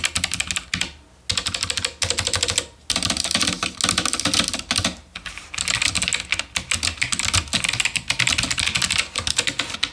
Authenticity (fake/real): real